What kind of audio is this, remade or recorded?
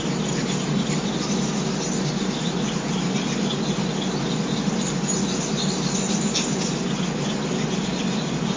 recorded